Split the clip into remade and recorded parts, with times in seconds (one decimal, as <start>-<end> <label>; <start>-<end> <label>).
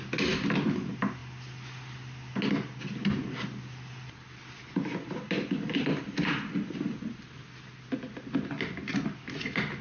0.0-9.8 recorded